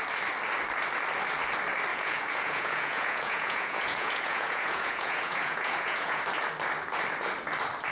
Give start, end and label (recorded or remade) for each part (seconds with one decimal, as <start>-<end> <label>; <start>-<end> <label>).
0.0-1.9 recorded; 1.9-6.2 remade; 6.2-7.9 recorded